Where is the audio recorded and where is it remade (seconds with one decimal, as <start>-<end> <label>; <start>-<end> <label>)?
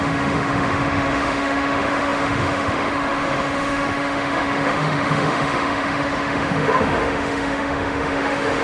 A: 0.0-8.6 remade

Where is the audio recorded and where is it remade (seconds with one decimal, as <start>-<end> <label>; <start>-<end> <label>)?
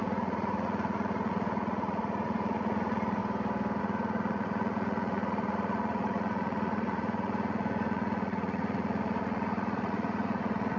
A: 0.0-3.2 remade; 3.2-3.8 recorded; 3.8-10.8 remade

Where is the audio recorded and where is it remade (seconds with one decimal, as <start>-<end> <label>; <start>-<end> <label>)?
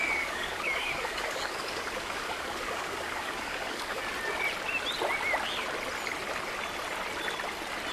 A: 0.0-4.0 remade; 4.0-7.9 recorded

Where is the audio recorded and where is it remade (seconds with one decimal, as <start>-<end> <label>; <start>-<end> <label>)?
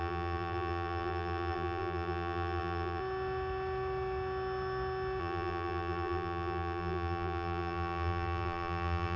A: 0.0-3.0 remade; 3.0-5.2 recorded; 5.2-9.2 remade